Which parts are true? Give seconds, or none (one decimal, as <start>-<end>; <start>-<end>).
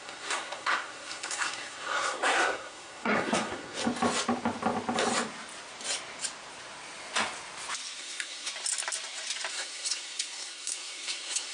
3.8-8.0; 8.5-9.5